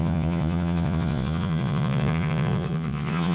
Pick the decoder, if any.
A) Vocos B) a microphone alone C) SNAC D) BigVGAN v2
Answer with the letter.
A